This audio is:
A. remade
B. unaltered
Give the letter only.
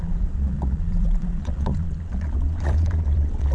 A